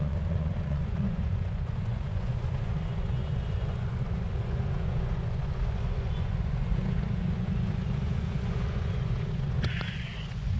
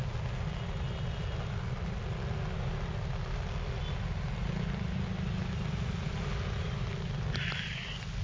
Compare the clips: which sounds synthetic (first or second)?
first